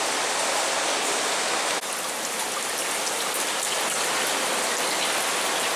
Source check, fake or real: real